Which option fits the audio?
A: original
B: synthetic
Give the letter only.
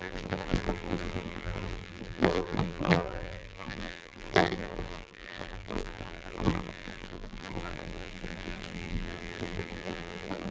B